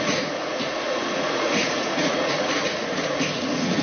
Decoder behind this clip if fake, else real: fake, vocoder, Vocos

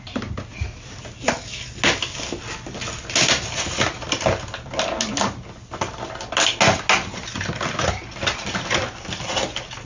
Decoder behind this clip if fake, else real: real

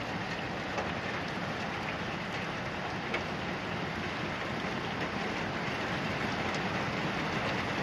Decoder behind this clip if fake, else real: real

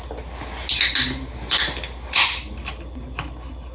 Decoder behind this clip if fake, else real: real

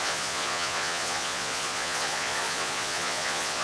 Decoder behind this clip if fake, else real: fake, vocoder, Vocos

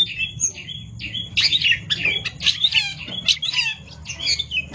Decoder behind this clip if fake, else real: real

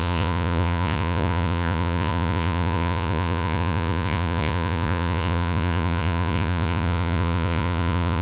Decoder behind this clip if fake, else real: fake, vocoder, Vocos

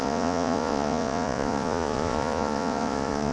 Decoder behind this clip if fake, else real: fake, vocoder, Vocos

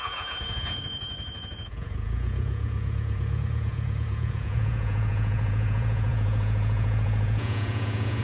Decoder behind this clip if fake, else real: fake, vocoder, Vocos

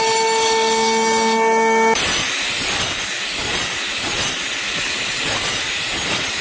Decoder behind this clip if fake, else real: real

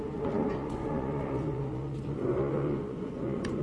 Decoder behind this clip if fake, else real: fake, vocoder, Vocos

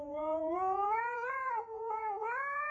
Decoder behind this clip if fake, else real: fake, vocoder, Vocos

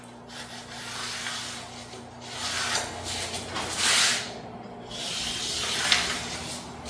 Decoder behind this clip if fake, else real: real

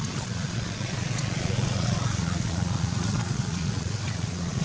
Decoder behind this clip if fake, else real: fake, vocoder, Vocos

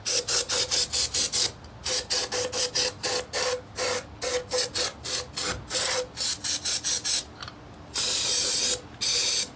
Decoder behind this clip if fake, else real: real